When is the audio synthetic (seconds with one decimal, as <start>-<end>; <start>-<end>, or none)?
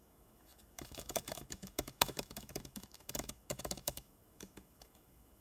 0.0-5.4